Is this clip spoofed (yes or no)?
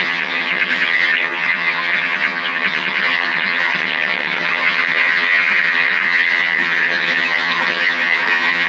yes